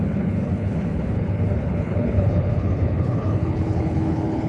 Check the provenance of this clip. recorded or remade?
remade